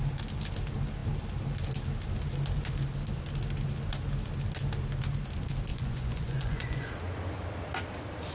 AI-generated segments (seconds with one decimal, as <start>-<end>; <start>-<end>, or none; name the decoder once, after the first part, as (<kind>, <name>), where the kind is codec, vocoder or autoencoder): 5.7-6.9 (vocoder, Vocos)